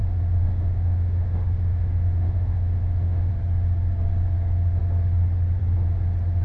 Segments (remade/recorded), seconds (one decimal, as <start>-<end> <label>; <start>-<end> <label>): 0.0-3.3 remade; 3.3-6.4 recorded